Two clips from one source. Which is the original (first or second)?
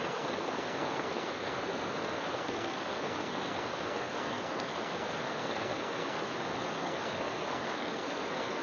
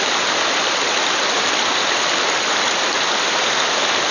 second